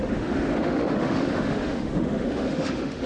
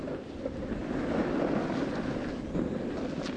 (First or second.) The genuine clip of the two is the second